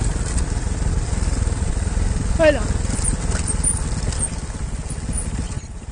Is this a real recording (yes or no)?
yes